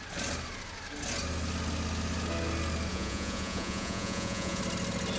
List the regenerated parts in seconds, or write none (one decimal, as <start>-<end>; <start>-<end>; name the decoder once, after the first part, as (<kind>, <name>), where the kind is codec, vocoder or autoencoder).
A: 2.9-4.6 (vocoder, Vocos)